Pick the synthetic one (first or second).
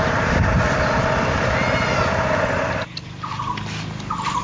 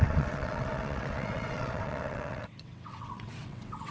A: second